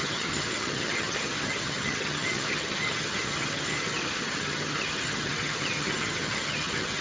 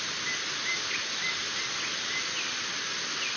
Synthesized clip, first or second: first